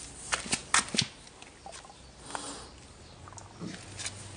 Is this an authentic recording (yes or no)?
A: yes